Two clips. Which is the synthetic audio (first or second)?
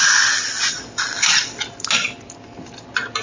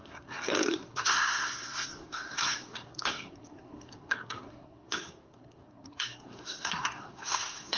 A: second